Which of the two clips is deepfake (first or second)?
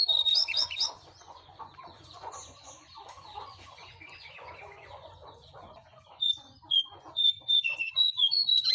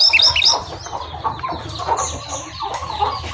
first